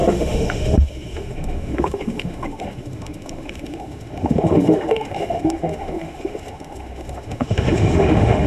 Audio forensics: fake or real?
fake